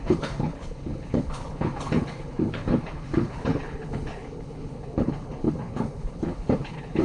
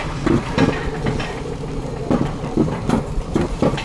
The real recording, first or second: second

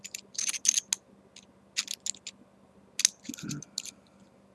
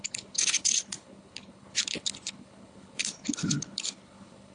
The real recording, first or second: first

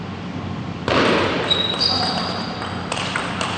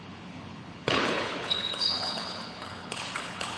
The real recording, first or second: first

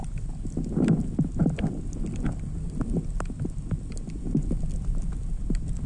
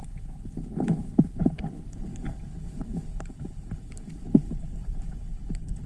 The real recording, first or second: first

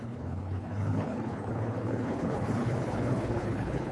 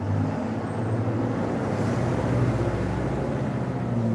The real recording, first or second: second